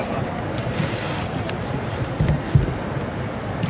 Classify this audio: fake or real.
real